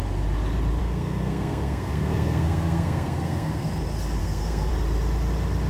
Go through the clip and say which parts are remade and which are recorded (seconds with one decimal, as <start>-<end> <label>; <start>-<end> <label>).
0.0-0.8 recorded; 0.8-3.7 remade; 3.7-4.2 recorded; 4.2-4.7 remade; 4.7-5.7 recorded